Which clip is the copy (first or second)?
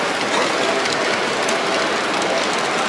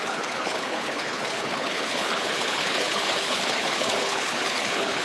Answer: second